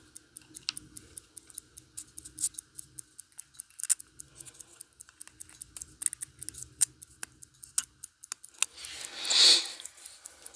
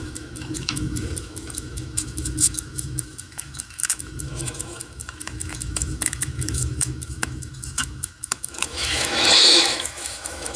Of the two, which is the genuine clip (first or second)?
first